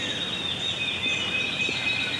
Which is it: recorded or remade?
recorded